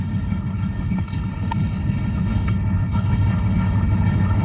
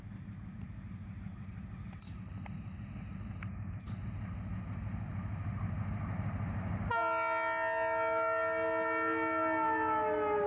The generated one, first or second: first